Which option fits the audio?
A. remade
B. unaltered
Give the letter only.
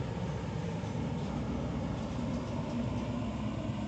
B